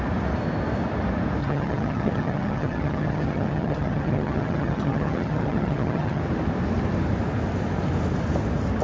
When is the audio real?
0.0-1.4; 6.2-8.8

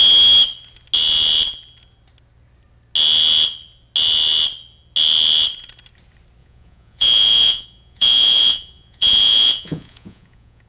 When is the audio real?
0.0-6.4

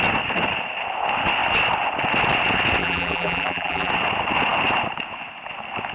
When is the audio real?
0.0-2.8; 3.9-5.9

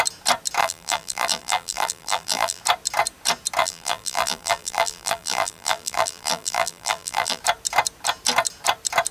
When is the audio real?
0.0-0.6; 2.6-3.6; 7.4-9.1

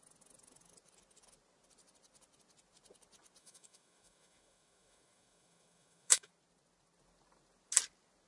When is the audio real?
0.0-3.4; 6.3-8.3

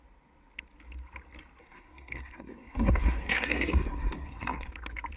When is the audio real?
0.0-1.6; 4.7-5.2

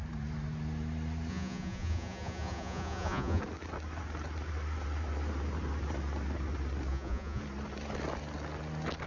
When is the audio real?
0.0-1.3; 3.4-6.9; 7.4-9.1

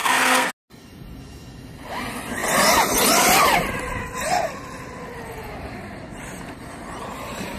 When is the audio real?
0.5-7.6